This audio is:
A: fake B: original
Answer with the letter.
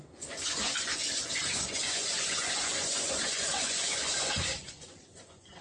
A